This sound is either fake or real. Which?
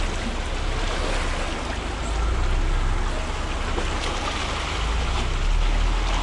real